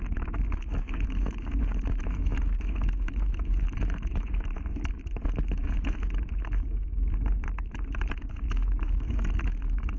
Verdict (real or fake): fake